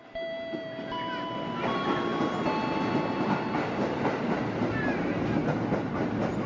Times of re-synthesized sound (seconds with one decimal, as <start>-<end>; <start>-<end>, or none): none